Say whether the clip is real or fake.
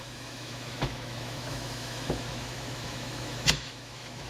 fake